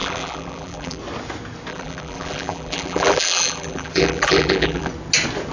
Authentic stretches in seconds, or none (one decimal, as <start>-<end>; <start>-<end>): 1.0-1.7; 4.9-5.5